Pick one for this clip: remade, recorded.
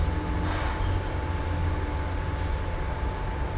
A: recorded